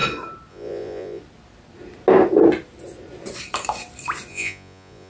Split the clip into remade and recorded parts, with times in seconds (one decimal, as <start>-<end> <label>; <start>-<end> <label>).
0.0-0.5 recorded; 0.5-1.2 remade; 1.2-4.3 recorded; 4.3-5.1 remade